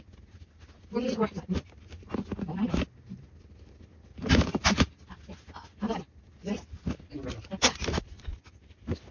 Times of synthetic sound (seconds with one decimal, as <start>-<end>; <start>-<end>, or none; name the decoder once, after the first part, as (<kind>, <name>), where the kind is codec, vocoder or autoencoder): 6.4-7.0 (vocoder, BigVGAN v2)